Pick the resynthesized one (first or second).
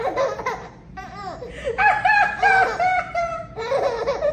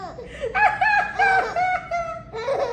first